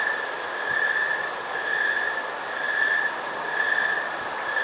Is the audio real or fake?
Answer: real